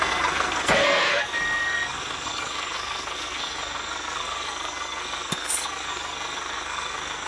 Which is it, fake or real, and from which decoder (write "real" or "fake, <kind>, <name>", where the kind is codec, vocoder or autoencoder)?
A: fake, codec, SNAC